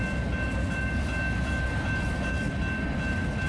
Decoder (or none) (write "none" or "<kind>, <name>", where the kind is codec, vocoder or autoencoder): none